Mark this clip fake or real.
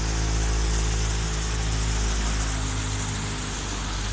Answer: real